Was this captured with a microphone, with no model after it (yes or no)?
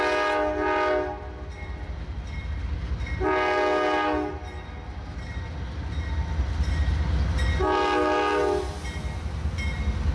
yes